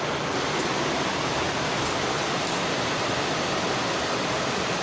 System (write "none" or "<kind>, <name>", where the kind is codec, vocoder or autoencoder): none